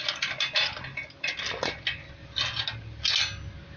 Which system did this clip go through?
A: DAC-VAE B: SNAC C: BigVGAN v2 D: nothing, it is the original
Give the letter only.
D